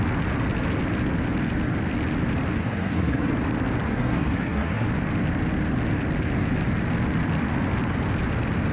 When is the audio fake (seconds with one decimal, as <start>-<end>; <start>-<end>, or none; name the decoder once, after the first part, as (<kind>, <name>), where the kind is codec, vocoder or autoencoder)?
2.6-3.3 (codec, SNAC); 3.9-4.9